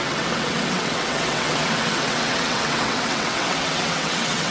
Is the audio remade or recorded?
remade